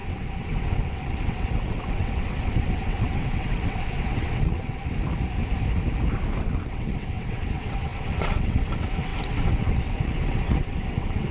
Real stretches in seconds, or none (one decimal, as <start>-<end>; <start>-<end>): 4.8-6.4